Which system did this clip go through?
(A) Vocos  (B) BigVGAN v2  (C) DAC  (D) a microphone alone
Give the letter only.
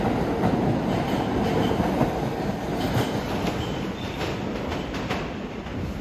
D